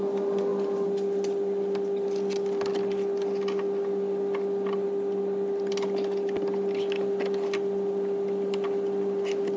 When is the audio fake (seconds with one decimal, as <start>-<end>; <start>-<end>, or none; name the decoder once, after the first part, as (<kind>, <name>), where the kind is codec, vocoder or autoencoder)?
none

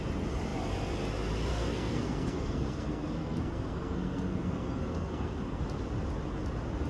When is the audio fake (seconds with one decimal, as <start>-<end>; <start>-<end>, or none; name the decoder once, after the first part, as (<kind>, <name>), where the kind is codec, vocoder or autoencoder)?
1.5-5.6 (codec, SNAC)

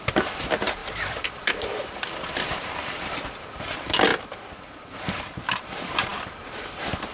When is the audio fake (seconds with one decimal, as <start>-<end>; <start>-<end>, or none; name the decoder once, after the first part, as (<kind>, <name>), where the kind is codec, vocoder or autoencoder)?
0.8-3.0 (vocoder, BigVGAN v2)

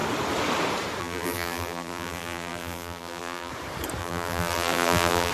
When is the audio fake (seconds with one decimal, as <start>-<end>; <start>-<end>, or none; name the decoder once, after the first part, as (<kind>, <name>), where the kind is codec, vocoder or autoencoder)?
1.0-3.5 (vocoder, BigVGAN v2); 4.0-5.3

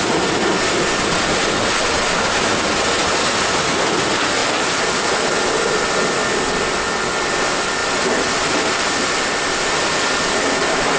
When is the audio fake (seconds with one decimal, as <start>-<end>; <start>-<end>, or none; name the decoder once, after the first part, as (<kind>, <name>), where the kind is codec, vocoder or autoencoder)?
4.4-5.5 (vocoder, BigVGAN v2); 7.8-10.1